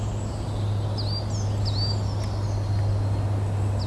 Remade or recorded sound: recorded